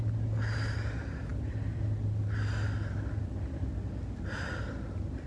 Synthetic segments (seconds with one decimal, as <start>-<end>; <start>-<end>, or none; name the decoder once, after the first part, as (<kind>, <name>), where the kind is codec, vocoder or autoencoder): none